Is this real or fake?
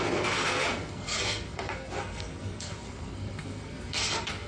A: fake